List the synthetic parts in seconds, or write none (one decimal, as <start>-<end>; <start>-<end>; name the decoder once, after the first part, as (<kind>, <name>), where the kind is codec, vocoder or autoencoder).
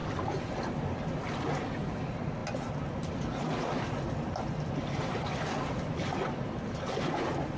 none